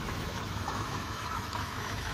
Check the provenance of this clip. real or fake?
fake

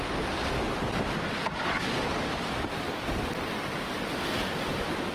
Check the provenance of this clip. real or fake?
real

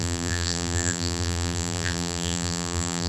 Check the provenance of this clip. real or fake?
fake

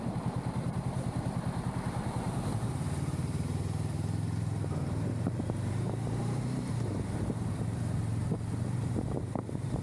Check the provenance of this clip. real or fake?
fake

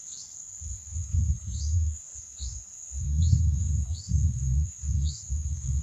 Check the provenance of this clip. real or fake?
fake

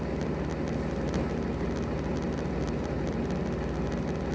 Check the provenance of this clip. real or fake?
real